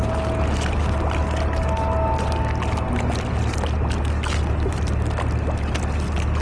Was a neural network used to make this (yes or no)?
no